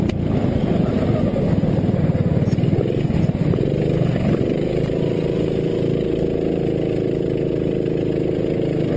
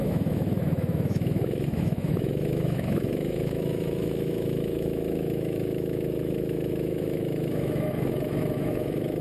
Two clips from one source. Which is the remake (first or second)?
second